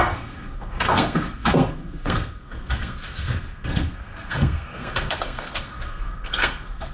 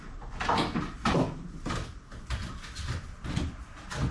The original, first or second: second